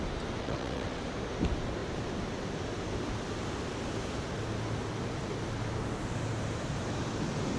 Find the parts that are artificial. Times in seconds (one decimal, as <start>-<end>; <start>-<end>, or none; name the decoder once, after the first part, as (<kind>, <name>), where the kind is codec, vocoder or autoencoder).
0.4-1.0 (vocoder, WaveNeXt)